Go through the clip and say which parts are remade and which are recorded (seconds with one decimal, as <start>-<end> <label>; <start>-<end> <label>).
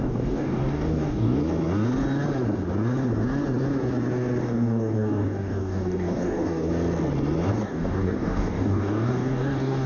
0.0-1.4 remade; 1.4-4.4 recorded; 4.4-6.7 remade; 6.7-7.5 recorded; 7.5-9.9 remade